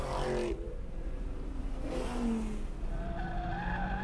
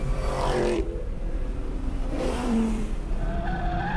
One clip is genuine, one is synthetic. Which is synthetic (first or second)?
second